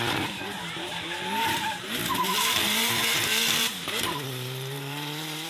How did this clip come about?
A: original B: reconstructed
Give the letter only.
B